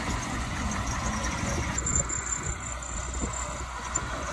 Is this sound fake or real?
fake